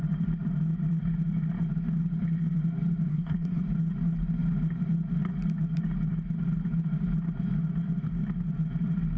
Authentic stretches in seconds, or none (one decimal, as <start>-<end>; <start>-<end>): 0.0-3.1; 3.6-9.2